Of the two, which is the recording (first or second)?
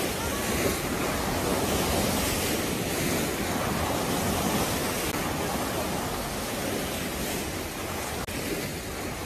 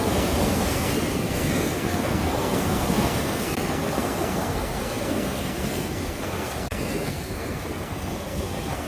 first